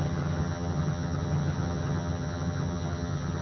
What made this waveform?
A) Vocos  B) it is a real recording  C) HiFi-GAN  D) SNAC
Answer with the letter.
C